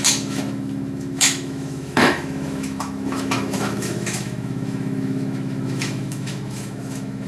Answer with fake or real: fake